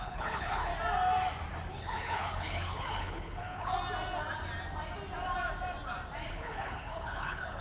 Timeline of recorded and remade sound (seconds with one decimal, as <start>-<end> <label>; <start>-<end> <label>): 0.0-0.7 remade; 0.7-1.7 recorded; 1.7-3.7 remade; 3.7-6.3 recorded; 6.3-7.6 remade